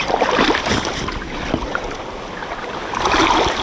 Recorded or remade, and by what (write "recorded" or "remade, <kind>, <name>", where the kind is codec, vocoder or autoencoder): recorded